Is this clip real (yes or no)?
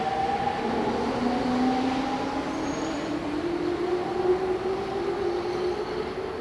yes